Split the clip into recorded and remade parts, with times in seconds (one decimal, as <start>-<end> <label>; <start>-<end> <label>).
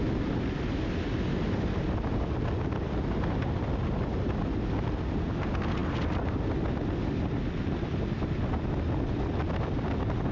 0.0-10.3 recorded